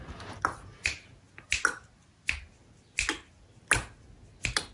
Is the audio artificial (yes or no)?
no